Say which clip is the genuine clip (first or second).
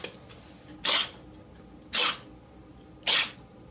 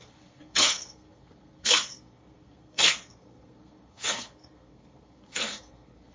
first